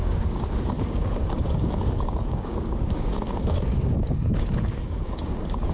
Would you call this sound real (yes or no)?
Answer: no